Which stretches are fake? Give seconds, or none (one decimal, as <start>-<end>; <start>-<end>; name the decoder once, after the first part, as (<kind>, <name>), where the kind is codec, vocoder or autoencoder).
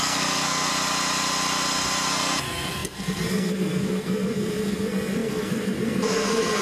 0.0-0.7 (codec, SNAC); 2.1-6.6